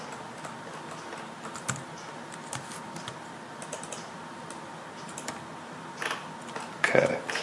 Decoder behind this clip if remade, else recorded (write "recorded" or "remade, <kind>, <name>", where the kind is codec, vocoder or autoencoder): recorded